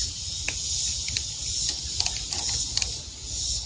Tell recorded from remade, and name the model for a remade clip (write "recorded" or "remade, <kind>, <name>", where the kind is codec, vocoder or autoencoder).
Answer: recorded